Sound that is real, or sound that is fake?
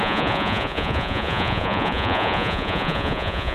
fake